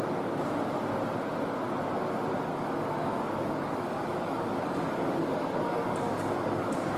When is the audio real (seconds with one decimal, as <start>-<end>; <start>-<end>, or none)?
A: 0.0-2.5